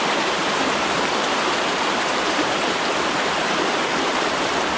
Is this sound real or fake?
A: fake